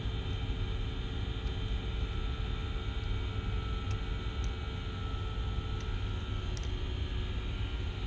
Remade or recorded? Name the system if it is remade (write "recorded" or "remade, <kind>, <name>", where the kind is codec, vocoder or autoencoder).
recorded